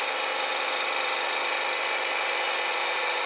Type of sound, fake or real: real